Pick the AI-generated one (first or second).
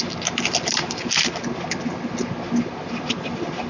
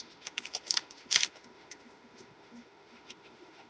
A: second